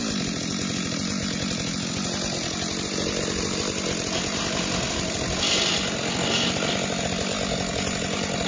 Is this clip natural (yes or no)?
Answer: yes